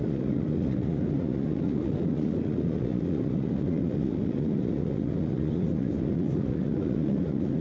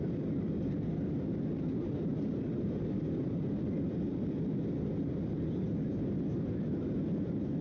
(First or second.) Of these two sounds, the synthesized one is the first